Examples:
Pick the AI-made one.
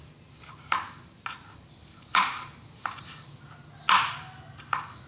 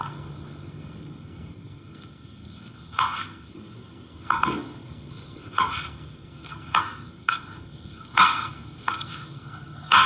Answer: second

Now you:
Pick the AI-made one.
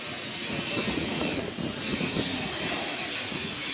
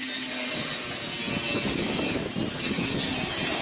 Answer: first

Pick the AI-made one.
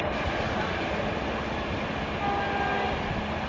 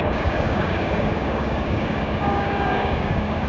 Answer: second